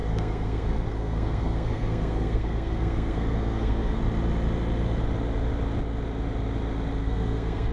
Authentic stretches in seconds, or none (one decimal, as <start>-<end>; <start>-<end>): 4.0-7.0